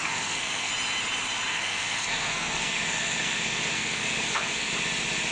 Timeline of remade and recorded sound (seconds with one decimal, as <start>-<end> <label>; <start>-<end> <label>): 0.0-0.7 remade; 0.7-1.5 recorded; 1.5-4.7 remade; 4.7-5.3 recorded